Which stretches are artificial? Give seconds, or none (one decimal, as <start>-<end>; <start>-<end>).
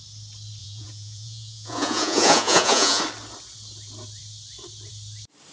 0.6-3.0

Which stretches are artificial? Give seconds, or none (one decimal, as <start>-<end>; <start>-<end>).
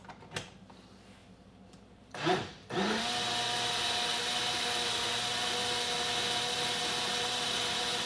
none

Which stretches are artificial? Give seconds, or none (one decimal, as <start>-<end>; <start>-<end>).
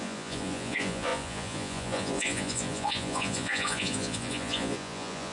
0.0-5.3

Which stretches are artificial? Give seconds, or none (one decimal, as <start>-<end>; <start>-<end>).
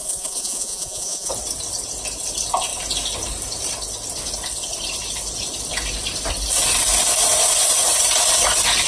0.0-1.3